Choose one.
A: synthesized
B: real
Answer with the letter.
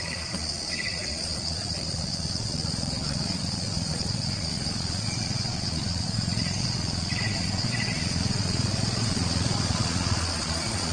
A